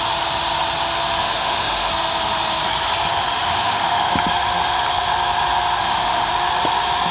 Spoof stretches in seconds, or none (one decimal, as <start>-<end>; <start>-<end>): 1.2-1.9; 3.4-4.1; 5.8-6.3